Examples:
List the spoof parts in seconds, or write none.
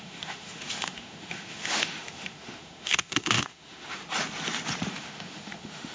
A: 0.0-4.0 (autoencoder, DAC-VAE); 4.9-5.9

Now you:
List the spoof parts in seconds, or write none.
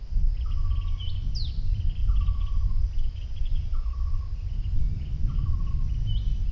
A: none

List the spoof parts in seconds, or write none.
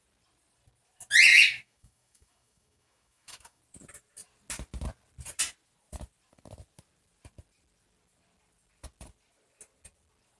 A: 1.3-3.6 (autoencoder, DAC-VAE)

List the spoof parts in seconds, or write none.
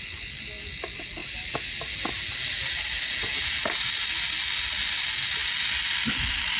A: none